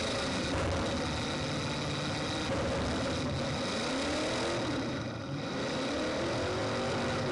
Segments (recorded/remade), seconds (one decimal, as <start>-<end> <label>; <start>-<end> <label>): 0.0-7.3 recorded